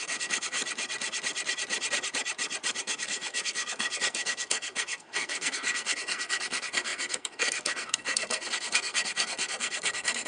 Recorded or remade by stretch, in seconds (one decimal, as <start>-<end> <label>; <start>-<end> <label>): 0.0-0.6 remade; 0.6-2.8 recorded; 2.8-10.3 remade